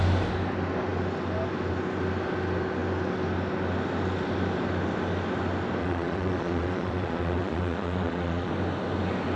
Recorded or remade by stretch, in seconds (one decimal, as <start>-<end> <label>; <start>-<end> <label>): 0.0-5.8 recorded; 5.8-8.5 remade; 8.5-9.4 recorded